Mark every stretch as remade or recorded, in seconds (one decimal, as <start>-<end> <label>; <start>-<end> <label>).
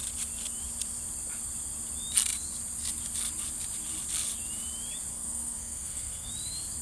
0.0-5.1 recorded; 5.1-6.3 remade; 6.3-6.8 recorded